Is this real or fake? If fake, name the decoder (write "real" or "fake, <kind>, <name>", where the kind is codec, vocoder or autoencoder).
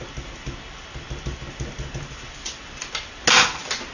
real